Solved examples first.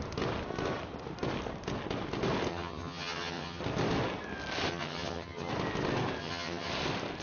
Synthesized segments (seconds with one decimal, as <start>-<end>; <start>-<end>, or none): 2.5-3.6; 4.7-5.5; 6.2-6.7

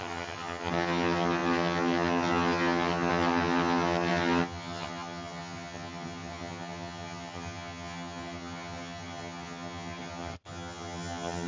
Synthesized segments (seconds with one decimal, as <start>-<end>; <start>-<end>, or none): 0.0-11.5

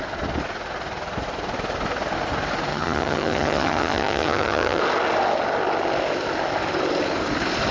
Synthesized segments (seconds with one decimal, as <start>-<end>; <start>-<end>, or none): 2.7-4.8

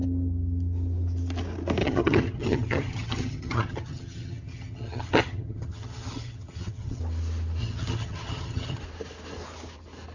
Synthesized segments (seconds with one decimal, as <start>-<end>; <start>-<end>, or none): 1.8-7.0; 7.6-8.8

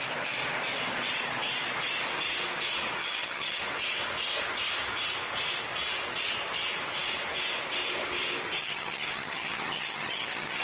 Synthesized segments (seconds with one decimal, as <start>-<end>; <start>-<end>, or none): 3.0-3.6; 8.6-10.6

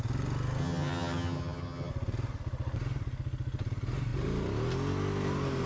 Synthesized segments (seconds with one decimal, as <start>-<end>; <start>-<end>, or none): 0.6-1.9